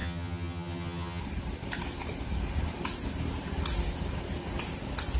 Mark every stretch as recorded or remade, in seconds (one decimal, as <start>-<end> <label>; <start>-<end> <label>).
0.0-1.2 remade; 1.2-5.2 recorded